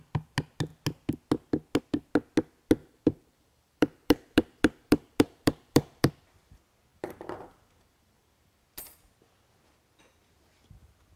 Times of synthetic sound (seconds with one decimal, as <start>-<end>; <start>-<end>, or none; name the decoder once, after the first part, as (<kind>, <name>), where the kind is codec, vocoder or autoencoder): 2.8-6.1 (vocoder, BigVGAN v2); 6.9-8.6